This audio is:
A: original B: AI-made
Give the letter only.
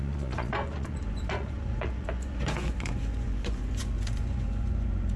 B